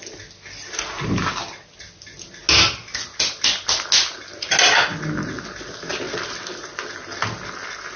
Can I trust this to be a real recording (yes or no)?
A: yes